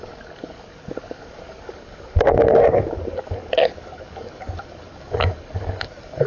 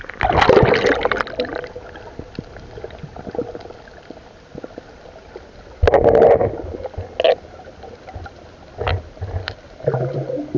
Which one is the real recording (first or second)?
second